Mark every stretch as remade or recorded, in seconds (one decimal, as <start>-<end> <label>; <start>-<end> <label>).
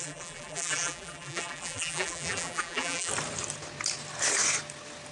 0.0-3.1 remade; 3.1-5.1 recorded